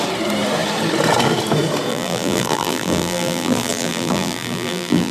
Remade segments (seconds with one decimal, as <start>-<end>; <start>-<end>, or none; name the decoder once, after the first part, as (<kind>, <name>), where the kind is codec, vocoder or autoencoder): 1.9-5.1 (vocoder, BigVGAN v2)